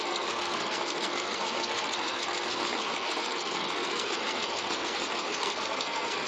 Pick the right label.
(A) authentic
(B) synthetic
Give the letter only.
B